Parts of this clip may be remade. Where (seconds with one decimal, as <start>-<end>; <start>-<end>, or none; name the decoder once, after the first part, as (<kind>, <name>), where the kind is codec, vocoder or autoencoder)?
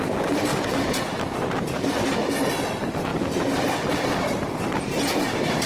0.0-3.1 (vocoder, BigVGAN v2); 3.9-5.7